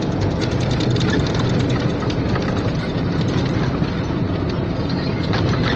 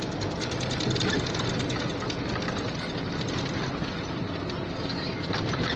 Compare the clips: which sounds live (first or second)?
second